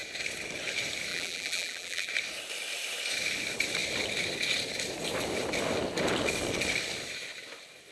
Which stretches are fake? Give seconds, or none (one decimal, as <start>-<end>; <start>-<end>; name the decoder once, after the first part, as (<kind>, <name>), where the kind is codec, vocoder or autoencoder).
1.1-2.1 (vocoder, BigVGAN v2)